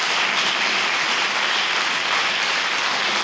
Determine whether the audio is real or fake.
real